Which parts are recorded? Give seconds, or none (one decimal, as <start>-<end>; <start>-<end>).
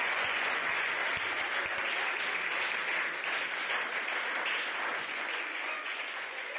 1.0-5.0